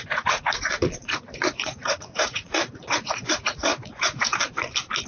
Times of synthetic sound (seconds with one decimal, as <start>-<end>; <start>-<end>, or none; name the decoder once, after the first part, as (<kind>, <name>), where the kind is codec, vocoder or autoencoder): 0.0-4.3 (vocoder, Vocos)